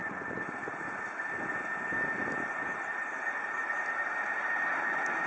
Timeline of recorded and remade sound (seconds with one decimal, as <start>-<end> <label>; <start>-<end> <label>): 0.0-1.2 remade; 1.2-5.3 recorded